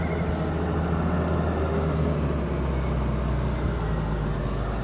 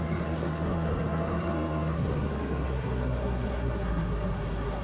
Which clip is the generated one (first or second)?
second